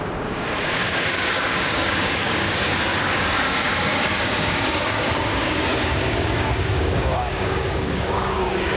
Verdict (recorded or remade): remade